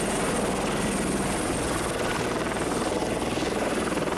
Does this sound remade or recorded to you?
recorded